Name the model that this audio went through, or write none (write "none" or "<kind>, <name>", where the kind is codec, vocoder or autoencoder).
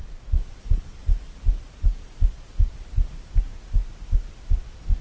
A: none